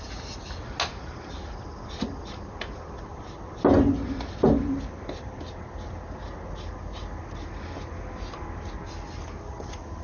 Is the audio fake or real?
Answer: real